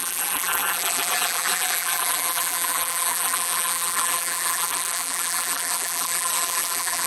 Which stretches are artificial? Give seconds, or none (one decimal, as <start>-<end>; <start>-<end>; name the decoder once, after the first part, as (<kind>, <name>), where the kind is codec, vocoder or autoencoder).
0.0-7.1 (vocoder, BigVGAN v2)